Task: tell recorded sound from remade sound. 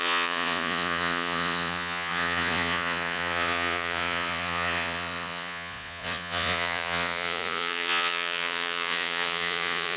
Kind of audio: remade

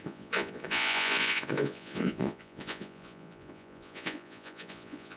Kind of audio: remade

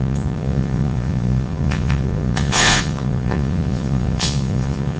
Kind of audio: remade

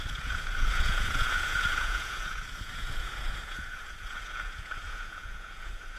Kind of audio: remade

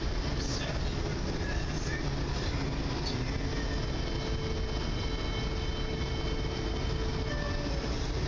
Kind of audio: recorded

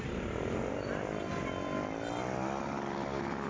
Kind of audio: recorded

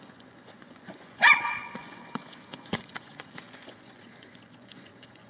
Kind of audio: remade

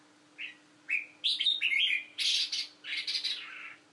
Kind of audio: recorded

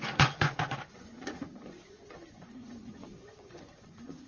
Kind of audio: remade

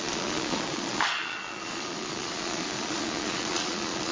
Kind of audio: remade